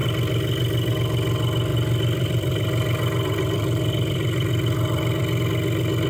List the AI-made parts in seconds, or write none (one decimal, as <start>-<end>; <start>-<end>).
0.0-0.9; 1.7-5.4